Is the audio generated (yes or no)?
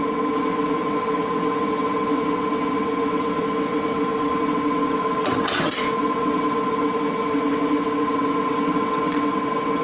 yes